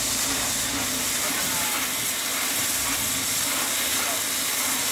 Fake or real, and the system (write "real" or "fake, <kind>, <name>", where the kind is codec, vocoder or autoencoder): real